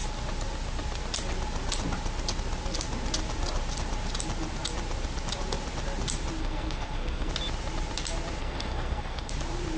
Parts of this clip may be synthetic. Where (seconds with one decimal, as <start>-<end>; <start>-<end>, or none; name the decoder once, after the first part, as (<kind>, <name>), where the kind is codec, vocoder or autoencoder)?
6.4-7.3 (codec, SNAC); 8.4-9.3